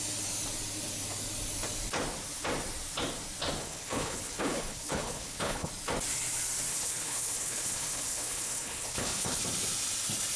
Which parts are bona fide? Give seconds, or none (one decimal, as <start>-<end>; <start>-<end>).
0.0-3.6; 5.7-6.7; 9.4-10.4

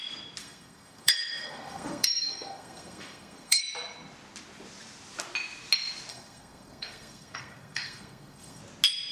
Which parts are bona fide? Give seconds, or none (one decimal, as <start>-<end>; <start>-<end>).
0.0-0.4; 3.6-6.1; 8.6-9.1

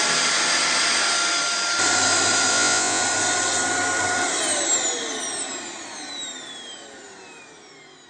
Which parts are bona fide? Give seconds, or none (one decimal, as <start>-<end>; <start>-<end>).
0.0-2.5; 3.0-8.1